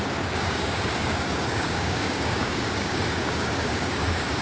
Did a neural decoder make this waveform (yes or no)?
yes